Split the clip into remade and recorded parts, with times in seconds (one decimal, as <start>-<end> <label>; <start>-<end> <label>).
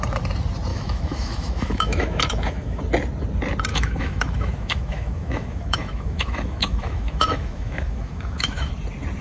0.0-0.7 recorded; 0.7-2.8 remade; 2.8-3.7 recorded; 3.7-8.7 remade; 8.7-9.2 recorded